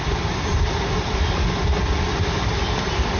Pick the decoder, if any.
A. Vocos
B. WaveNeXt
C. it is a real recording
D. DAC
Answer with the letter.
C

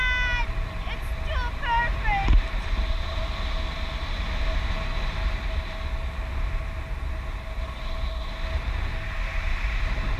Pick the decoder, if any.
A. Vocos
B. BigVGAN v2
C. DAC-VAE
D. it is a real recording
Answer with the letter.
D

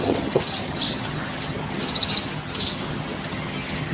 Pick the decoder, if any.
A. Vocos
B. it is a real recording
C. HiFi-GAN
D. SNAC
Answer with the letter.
C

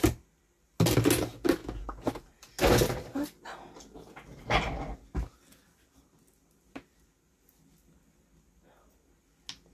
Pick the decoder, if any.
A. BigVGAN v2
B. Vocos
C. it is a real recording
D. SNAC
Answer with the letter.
C